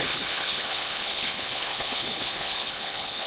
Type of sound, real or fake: fake